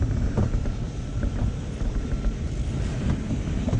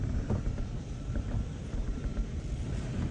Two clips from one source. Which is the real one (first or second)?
first